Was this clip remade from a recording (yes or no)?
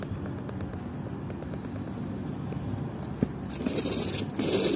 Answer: no